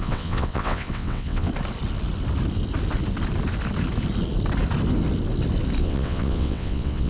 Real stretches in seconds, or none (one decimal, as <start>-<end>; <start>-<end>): 1.5-5.8